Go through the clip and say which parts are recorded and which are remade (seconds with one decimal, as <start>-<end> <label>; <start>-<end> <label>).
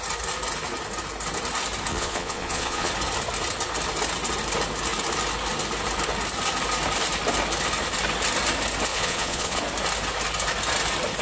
0.0-1.9 recorded; 1.9-2.9 remade; 2.9-8.9 recorded; 8.9-9.6 remade; 9.6-11.2 recorded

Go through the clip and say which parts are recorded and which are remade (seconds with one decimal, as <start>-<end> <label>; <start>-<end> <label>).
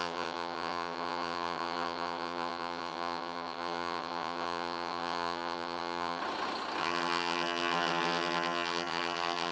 0.0-6.2 remade; 6.2-6.8 recorded; 6.8-9.5 remade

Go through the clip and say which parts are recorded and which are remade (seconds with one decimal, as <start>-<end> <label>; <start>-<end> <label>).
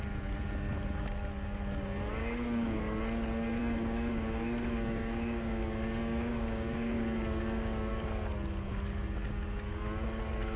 0.0-2.2 recorded; 2.2-2.8 remade; 2.8-3.6 recorded; 3.6-7.9 remade; 7.9-10.6 recorded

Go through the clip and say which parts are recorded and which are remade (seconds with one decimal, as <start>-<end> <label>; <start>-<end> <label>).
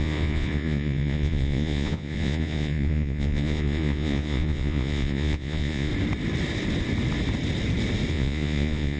0.0-5.9 remade; 5.9-8.1 recorded; 8.1-9.0 remade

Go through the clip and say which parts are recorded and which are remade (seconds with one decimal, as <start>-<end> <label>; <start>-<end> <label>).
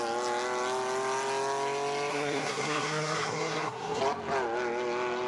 0.0-2.1 recorded; 2.1-4.0 remade; 4.0-5.3 recorded